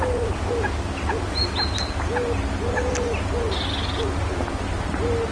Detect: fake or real real